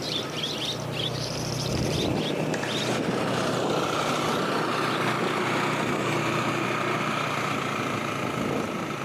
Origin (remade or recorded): recorded